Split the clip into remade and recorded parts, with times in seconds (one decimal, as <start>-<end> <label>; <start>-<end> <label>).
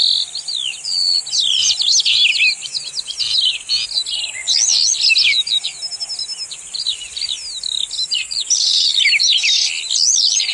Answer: 0.0-10.5 recorded